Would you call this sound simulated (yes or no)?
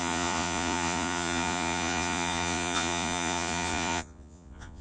yes